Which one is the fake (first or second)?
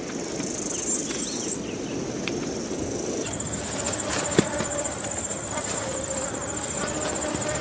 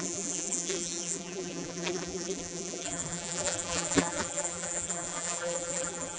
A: second